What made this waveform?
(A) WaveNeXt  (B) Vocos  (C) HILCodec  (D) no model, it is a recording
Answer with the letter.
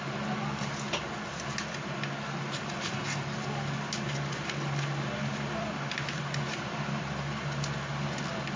D